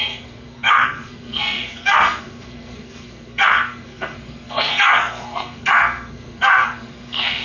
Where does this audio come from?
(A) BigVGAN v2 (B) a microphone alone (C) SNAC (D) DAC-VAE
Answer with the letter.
C